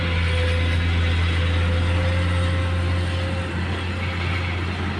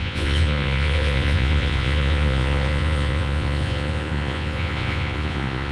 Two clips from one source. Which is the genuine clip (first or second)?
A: first